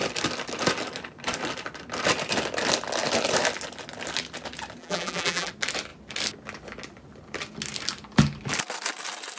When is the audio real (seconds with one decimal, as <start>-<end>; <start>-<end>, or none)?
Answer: 0.0-4.8; 5.5-9.4